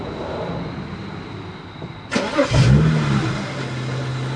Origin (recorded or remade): recorded